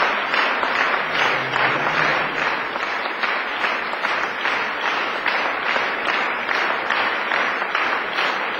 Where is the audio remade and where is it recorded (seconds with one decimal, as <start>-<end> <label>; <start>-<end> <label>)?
0.0-8.6 recorded